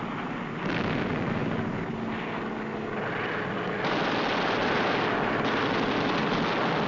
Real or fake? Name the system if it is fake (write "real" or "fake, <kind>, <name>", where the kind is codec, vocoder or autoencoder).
real